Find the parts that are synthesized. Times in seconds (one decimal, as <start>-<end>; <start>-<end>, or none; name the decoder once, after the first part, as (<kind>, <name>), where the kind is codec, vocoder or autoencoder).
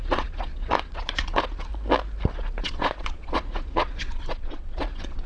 0.0-1.7 (vocoder, Vocos); 2.3-5.3